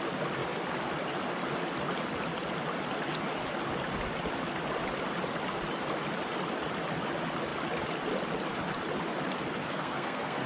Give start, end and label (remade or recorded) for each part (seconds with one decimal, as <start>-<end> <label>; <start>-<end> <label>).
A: 0.0-9.6 recorded; 9.6-10.5 remade